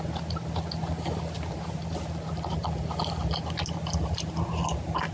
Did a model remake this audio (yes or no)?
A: no